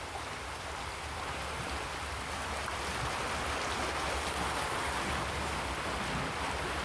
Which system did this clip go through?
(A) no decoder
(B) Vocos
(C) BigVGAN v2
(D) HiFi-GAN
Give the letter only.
A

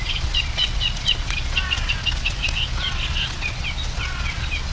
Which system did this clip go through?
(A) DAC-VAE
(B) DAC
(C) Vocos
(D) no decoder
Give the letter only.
C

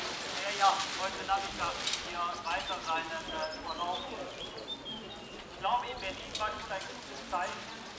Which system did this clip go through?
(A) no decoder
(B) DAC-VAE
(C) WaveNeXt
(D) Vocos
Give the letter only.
A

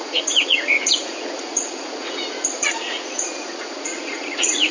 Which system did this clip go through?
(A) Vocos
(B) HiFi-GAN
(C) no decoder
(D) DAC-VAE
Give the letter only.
A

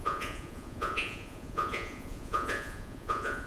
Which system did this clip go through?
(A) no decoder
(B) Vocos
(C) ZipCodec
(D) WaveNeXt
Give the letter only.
B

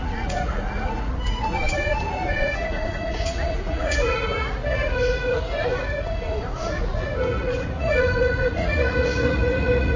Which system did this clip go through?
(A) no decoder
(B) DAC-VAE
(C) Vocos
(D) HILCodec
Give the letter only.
C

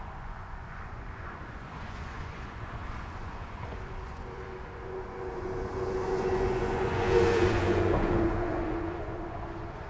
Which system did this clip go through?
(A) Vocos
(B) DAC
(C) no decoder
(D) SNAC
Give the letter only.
A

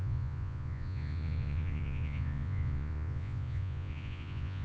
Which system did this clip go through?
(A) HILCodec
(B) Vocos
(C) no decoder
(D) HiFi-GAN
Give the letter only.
B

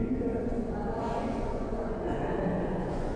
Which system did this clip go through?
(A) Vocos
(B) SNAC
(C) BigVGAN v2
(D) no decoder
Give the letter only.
A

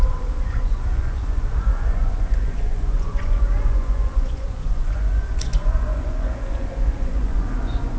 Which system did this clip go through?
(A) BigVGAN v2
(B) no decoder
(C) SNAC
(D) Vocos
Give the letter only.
D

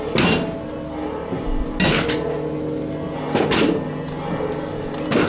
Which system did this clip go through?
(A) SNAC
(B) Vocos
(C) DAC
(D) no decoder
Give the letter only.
D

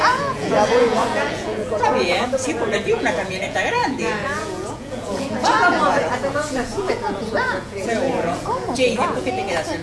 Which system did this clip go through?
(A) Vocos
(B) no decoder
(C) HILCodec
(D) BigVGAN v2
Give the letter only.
A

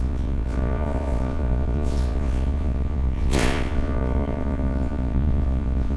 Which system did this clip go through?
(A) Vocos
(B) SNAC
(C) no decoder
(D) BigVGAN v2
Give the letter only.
A